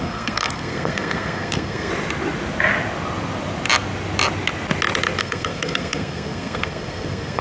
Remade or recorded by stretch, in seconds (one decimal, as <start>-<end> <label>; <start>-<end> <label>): 0.0-1.9 remade; 1.9-5.2 recorded; 5.2-7.4 remade